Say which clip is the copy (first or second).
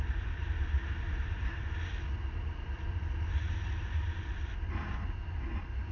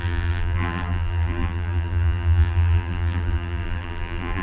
second